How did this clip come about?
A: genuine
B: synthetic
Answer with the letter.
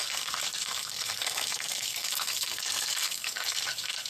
B